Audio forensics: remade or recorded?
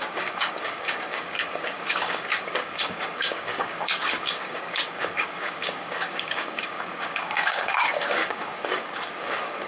remade